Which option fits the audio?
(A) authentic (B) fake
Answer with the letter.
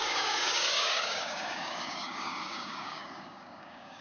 B